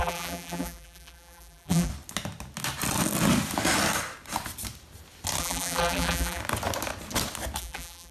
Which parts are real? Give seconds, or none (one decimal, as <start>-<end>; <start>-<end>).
1.9-5.4; 6.4-7.6